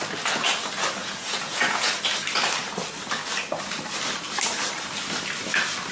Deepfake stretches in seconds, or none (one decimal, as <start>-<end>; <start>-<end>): 1.0-1.9